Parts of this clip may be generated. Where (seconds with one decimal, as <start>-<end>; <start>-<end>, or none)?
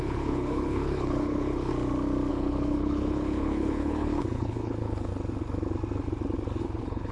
0.0-1.7; 2.3-5.1; 6.6-7.1